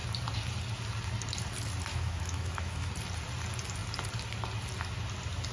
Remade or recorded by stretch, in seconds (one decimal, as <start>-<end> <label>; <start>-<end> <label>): 0.0-1.9 recorded; 1.9-2.9 remade; 2.9-5.5 recorded